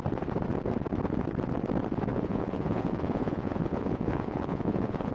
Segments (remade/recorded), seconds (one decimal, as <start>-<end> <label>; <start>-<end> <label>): 0.0-2.1 recorded; 2.1-5.1 remade